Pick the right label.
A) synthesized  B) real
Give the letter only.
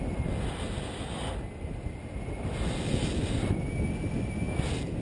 B